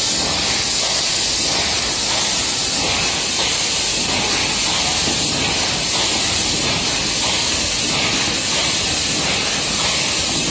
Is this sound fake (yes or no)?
no